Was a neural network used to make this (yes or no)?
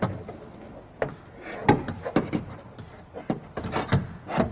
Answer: no